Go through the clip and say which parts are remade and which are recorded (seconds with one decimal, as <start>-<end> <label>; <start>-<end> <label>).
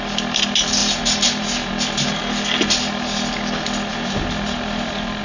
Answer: 0.0-0.8 recorded; 0.8-1.7 remade; 1.7-3.9 recorded; 3.9-5.2 remade